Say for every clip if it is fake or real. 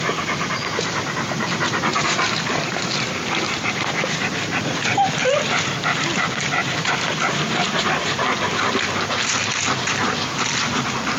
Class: real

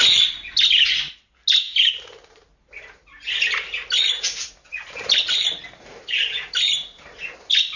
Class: real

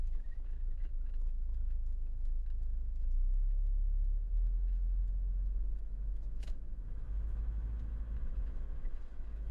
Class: fake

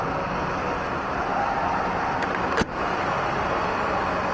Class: real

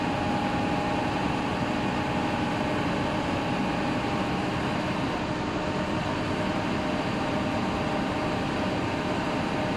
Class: real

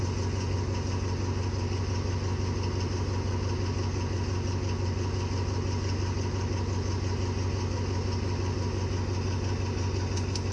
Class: real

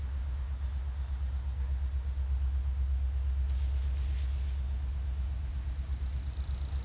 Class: real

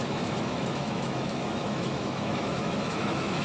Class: fake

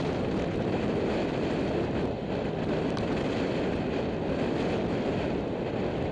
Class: real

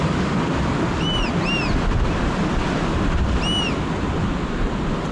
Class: real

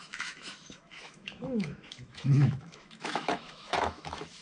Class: fake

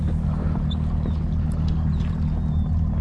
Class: real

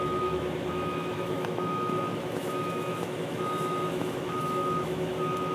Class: fake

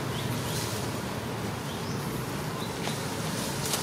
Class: real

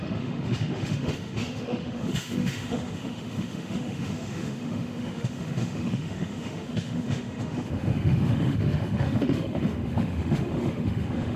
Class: fake